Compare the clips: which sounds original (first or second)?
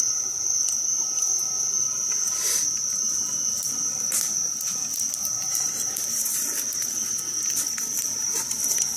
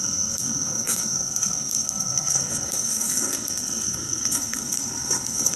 first